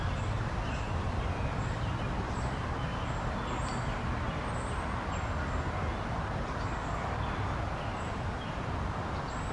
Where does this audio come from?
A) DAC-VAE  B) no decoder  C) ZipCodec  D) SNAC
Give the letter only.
B